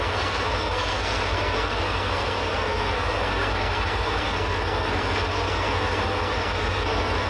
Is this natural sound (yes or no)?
no